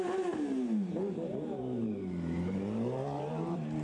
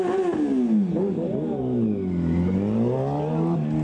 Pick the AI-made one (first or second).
first